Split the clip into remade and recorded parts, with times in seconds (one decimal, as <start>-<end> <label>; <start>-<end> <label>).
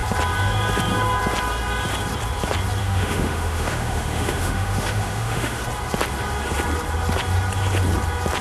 0.0-2.8 recorded; 2.8-5.6 remade; 5.6-8.4 recorded